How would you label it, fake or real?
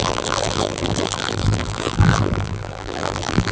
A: fake